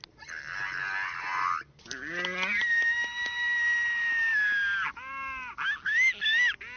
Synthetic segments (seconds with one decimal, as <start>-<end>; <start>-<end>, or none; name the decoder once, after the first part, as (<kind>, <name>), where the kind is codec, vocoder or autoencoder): none